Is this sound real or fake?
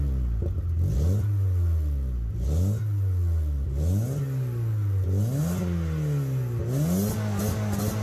real